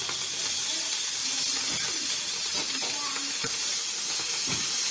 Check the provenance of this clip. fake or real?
real